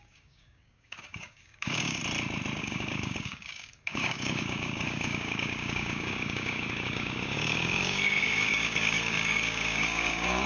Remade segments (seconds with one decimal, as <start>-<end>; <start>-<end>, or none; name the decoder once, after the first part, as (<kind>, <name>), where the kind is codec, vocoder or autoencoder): 0.0-2.0 (codec, DAC); 2.6-10.5